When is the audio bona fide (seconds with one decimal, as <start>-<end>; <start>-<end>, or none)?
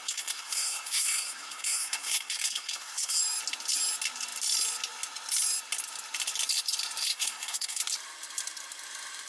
3.2-7.1; 7.8-9.3